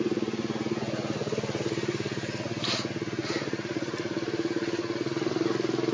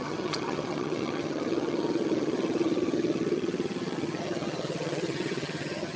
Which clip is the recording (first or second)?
first